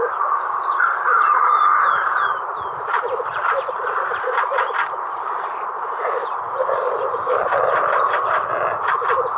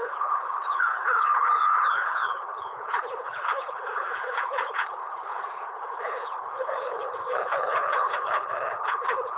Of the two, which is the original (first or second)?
first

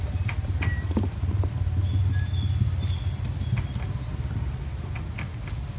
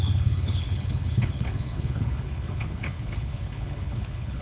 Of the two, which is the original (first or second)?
first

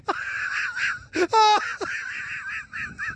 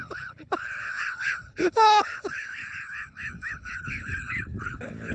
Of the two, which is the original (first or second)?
first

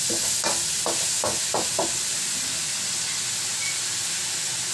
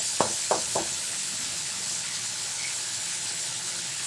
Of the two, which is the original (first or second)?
first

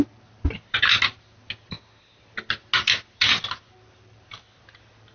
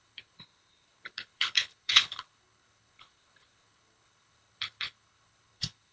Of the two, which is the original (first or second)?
first